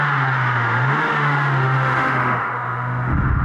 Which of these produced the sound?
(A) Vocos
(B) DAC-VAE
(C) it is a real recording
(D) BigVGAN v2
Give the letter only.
B